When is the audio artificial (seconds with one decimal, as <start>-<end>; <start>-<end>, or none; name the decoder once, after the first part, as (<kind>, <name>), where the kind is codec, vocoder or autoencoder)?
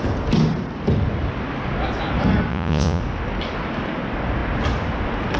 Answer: 2.5-3.0 (vocoder, Vocos)